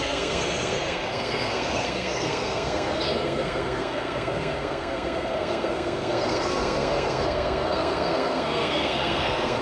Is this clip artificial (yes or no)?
yes